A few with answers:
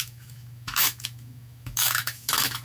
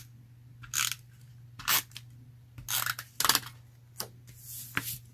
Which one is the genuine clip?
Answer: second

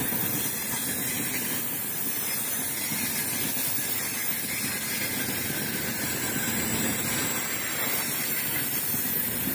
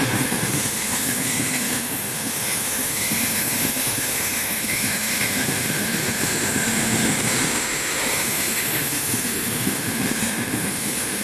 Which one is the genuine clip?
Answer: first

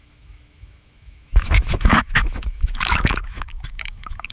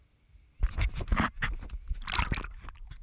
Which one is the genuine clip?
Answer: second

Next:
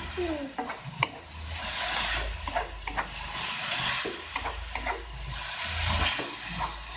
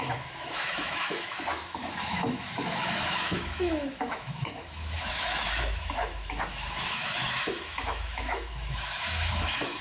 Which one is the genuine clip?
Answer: first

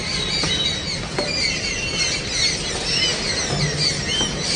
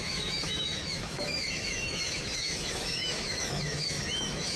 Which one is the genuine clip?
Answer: first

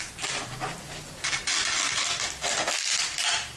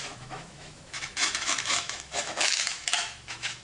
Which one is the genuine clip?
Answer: first